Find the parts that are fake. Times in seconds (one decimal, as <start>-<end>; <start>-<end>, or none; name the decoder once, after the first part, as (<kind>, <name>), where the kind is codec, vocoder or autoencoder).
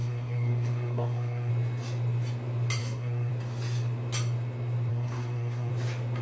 0.0-1.5 (codec, SNAC); 2.8-3.3; 4.9-5.7